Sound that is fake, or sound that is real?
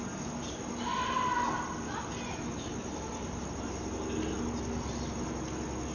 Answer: real